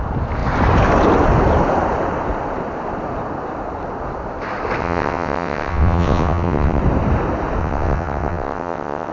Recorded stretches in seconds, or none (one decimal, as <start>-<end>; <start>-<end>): 0.0-4.8; 6.8-7.6